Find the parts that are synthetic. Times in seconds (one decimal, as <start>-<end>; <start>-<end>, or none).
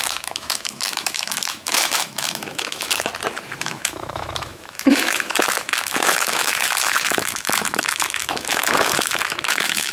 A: 0.0-3.1; 3.6-9.9